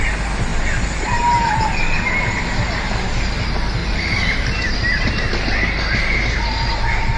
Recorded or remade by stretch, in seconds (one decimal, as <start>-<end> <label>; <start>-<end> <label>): 0.0-3.8 recorded; 3.8-5.1 remade; 5.1-7.2 recorded

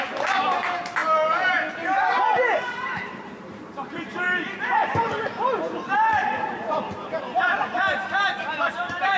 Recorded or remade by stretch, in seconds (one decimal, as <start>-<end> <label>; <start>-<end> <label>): 0.0-1.0 remade; 1.0-1.7 recorded; 1.7-9.2 remade

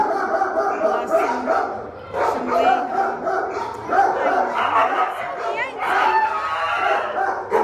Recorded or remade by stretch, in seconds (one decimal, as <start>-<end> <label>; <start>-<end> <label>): 0.0-7.6 recorded